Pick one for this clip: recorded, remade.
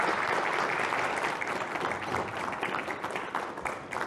remade